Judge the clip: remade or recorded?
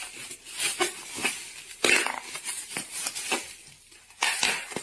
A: recorded